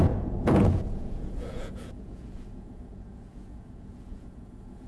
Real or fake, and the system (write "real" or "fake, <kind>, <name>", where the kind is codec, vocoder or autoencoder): fake, vocoder, Vocos